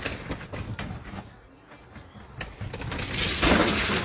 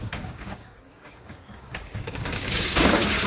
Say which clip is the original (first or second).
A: first